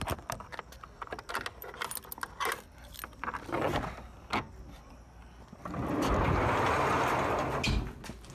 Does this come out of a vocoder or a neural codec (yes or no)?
no